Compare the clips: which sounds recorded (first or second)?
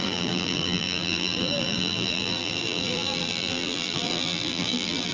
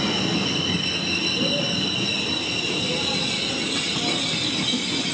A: second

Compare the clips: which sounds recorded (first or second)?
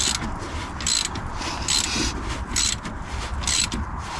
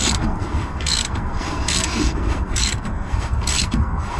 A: first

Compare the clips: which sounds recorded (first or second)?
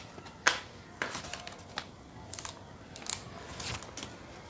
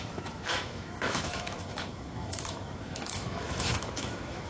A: first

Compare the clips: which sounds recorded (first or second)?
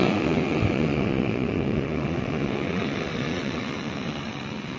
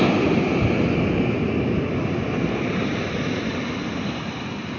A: second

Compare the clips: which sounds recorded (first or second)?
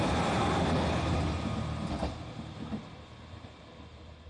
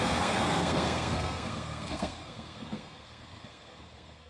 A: first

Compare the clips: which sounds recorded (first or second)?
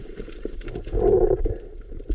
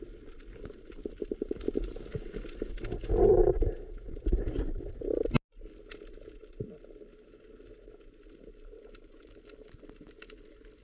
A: second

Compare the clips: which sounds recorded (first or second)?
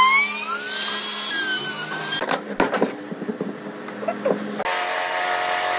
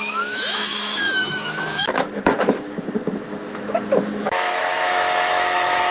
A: first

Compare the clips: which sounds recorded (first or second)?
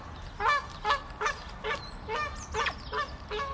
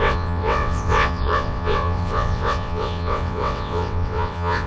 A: first